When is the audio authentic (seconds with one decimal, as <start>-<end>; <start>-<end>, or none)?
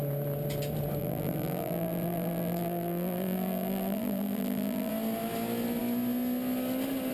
0.0-1.0; 4.9-7.1